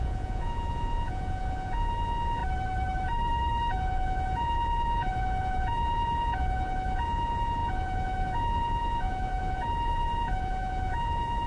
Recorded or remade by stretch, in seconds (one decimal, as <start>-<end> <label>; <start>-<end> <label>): 0.0-2.4 remade; 2.4-3.7 recorded; 3.7-11.5 remade

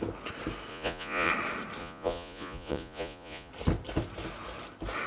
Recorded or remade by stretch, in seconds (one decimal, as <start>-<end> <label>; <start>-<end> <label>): 0.0-0.7 recorded; 0.7-1.3 remade; 1.3-1.8 recorded; 1.8-3.5 remade; 3.5-5.1 recorded